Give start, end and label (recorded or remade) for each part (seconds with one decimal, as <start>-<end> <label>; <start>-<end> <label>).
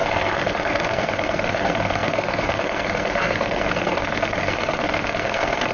0.0-5.7 remade